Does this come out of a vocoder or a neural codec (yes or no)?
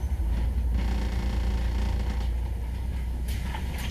no